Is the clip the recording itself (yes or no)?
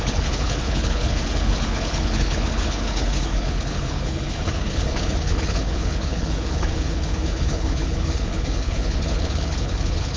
no